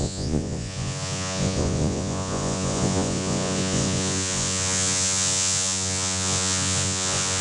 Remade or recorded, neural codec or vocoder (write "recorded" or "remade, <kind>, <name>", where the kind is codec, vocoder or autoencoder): remade, vocoder, Vocos